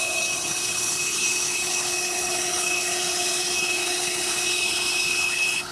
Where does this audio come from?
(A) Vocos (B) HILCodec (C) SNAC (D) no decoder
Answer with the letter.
B